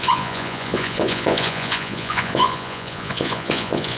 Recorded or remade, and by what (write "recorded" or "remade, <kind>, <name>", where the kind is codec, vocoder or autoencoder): remade, vocoder, Vocos